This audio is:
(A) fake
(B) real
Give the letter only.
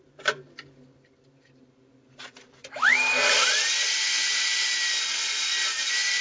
A